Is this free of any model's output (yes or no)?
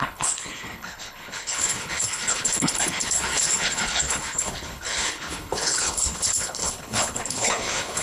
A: no